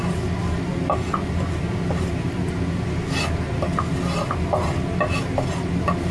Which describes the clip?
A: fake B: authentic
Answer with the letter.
B